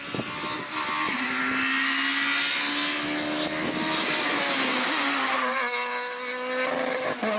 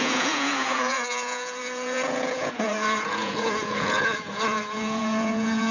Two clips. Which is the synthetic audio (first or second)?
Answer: second